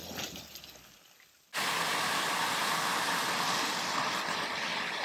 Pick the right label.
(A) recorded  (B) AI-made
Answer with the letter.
A